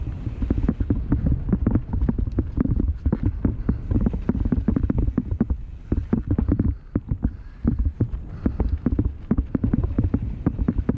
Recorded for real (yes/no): yes